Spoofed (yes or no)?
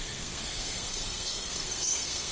yes